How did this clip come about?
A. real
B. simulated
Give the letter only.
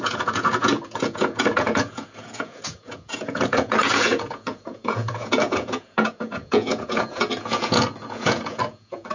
B